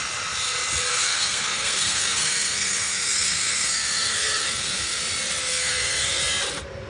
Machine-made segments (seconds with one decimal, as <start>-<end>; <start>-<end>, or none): 0.9-5.0; 5.5-6.2